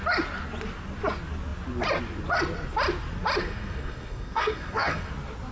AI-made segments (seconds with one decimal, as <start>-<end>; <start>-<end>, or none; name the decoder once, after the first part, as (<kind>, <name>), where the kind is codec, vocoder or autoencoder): 3.4-5.1 (codec, SNAC)